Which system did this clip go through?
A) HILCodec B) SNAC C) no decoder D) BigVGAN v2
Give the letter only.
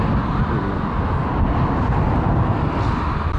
C